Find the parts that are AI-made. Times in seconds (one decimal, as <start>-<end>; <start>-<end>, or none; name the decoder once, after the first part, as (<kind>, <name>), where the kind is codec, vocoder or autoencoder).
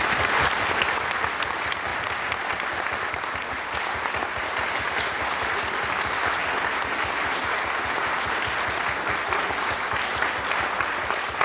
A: none